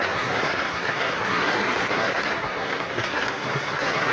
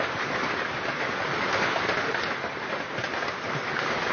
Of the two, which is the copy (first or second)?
first